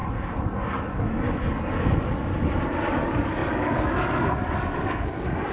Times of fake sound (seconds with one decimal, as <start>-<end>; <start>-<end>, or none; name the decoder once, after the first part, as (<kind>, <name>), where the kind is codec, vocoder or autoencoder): 0.7-2.3 (codec, DAC); 2.9-5.5